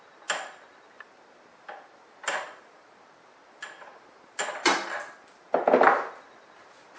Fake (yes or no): no